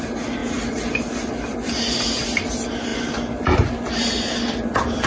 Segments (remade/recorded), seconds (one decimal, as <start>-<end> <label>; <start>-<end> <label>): 0.0-5.1 recorded